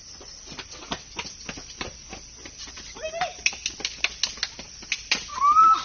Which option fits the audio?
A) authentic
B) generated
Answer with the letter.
A